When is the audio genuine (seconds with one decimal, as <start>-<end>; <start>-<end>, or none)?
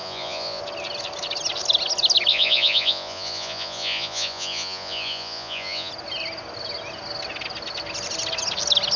0.6-2.3; 5.9-9.0